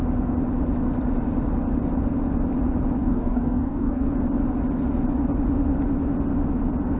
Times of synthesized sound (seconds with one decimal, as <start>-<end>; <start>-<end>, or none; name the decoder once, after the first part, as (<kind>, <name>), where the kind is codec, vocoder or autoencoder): 3.0-4.1 (codec, DAC)